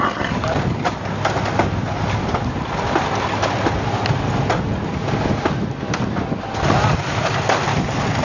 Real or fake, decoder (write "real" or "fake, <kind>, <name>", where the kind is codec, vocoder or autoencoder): real